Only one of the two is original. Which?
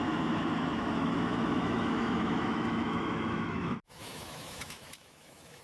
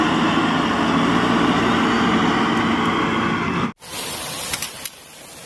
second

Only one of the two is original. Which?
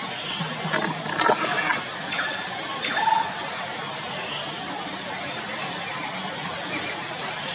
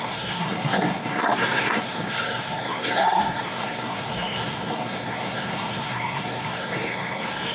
first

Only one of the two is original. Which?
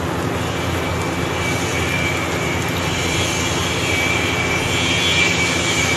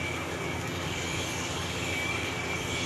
first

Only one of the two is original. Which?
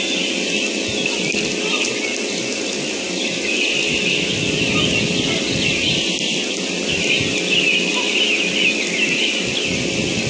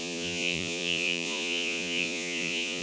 first